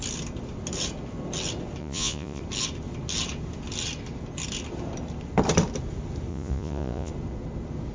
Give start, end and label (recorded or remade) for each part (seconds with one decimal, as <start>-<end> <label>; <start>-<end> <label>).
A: 0.0-1.8 recorded; 1.8-2.4 remade; 2.4-6.3 recorded; 6.3-7.1 remade; 7.1-7.9 recorded